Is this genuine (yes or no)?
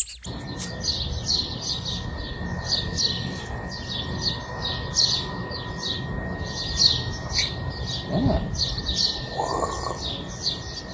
yes